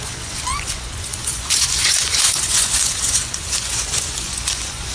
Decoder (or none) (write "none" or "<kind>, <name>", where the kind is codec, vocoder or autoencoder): vocoder, Vocos